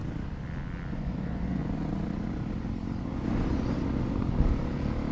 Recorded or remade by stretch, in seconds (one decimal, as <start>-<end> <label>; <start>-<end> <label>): 0.0-0.9 recorded; 0.9-1.6 remade; 1.6-5.1 recorded